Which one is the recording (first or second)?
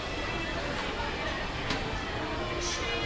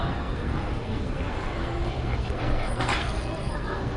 first